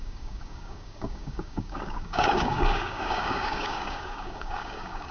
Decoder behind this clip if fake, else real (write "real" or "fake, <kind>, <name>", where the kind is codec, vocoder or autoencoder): fake, codec, DAC